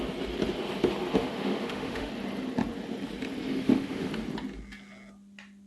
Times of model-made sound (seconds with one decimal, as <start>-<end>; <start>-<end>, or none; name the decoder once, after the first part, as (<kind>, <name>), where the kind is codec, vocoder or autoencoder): 1.2-2.1 (autoencoder, DAC-VAE); 3.5-4.1